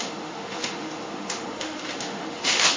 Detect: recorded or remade remade